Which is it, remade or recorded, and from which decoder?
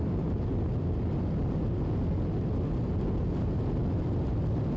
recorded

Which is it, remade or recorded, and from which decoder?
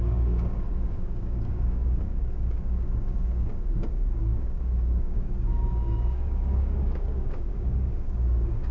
remade, codec, DAC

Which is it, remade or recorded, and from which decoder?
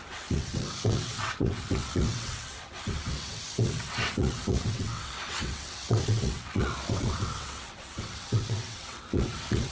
remade, vocoder, WaveNeXt